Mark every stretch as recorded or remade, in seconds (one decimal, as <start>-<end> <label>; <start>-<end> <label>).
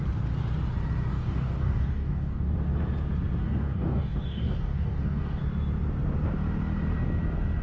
0.0-1.1 recorded; 1.1-2.5 remade; 2.5-3.4 recorded; 3.4-5.4 remade; 5.4-7.6 recorded